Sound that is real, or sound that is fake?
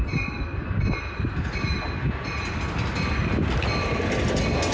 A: real